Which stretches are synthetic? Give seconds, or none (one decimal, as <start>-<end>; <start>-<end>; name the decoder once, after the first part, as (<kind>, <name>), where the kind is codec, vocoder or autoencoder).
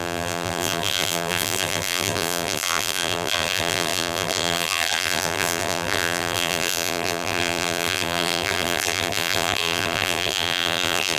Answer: 0.0-11.2 (vocoder, BigVGAN v2)